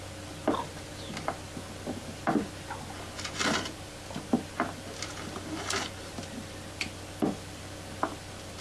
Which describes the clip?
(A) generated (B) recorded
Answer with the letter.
B